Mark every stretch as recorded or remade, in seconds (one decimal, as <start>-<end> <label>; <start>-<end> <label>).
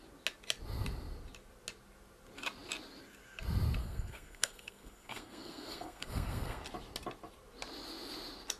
0.0-3.8 recorded; 3.8-6.6 remade; 6.6-8.6 recorded